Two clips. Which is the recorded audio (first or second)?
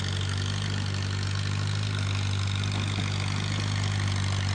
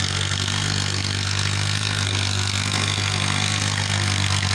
first